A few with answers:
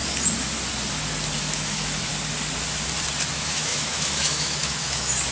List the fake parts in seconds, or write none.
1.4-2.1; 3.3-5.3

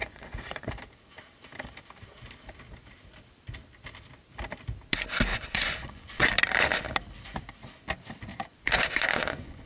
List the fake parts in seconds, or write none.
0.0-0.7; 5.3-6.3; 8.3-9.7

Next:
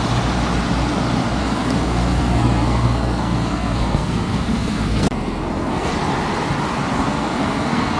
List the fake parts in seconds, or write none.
1.4-5.9; 6.9-8.0